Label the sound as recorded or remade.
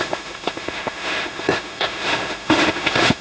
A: remade